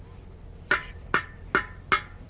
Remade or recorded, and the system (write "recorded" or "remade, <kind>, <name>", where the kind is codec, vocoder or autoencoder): recorded